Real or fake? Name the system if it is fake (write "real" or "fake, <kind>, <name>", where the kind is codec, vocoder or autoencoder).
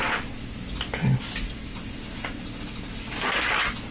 real